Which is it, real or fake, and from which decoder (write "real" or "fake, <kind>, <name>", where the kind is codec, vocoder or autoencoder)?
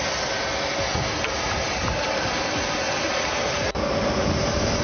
real